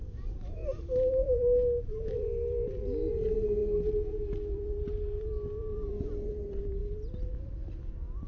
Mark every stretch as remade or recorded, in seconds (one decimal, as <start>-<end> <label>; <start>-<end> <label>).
0.0-6.8 remade; 6.8-7.3 recorded; 7.3-8.3 remade